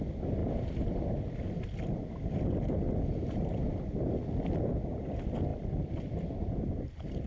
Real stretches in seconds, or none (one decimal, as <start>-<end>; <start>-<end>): 0.0-5.5; 6.7-7.3